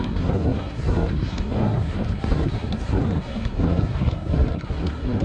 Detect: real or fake fake